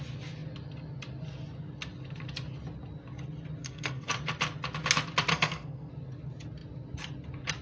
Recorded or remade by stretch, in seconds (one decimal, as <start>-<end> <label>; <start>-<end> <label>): 0.0-3.6 recorded; 3.6-4.1 remade; 4.1-5.3 recorded; 5.3-5.9 remade; 5.9-7.6 recorded